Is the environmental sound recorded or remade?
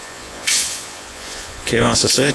remade